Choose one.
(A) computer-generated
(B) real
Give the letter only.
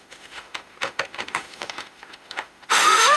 A